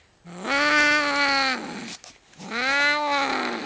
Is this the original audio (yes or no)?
yes